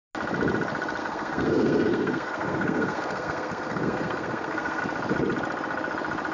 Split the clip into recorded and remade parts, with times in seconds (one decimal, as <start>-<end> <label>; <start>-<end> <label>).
0.0-1.0 recorded; 1.0-4.8 remade; 4.8-6.3 recorded